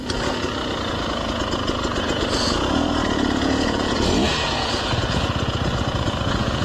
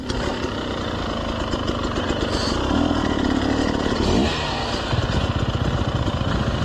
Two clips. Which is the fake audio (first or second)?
first